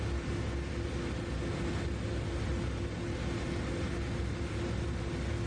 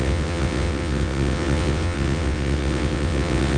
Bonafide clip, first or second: first